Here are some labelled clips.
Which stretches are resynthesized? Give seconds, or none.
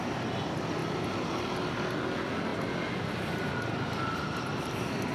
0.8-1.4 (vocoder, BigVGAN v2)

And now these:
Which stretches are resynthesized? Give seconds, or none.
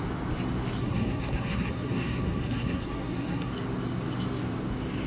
0.8-3.5 (codec, SNAC)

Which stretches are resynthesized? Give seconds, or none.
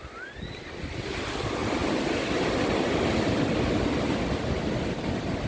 none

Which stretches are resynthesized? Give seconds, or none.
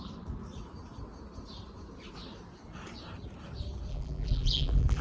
3.9-5.0 (vocoder, BigVGAN v2)